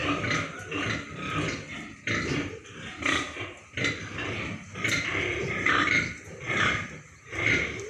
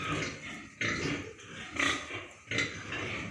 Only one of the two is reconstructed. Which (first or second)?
first